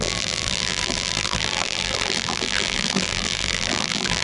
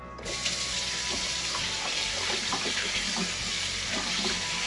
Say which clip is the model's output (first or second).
first